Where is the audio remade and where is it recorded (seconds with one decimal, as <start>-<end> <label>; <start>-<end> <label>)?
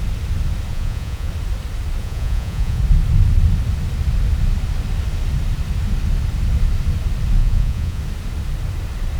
0.0-0.7 recorded; 0.7-1.3 remade; 1.3-2.0 recorded; 2.0-2.8 remade; 2.8-7.4 recorded; 7.4-8.0 remade; 8.0-9.2 recorded